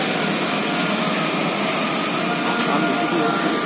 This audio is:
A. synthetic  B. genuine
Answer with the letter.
B